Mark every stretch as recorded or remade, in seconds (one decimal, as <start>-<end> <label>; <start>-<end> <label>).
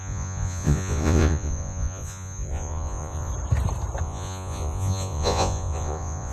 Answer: 0.0-3.3 remade; 3.3-4.0 recorded; 4.0-6.3 remade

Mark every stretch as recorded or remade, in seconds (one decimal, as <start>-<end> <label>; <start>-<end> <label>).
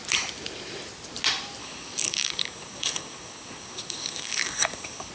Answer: 0.0-1.6 recorded; 1.6-5.1 remade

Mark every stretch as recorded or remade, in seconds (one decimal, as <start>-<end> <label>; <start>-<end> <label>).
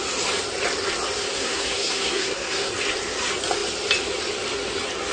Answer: 0.0-1.3 recorded; 1.3-2.7 remade; 2.7-5.1 recorded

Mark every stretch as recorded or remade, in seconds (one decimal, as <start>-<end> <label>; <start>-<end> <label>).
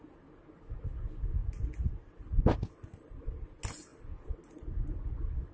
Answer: 0.0-5.5 recorded